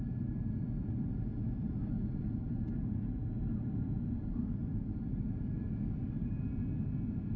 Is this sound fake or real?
real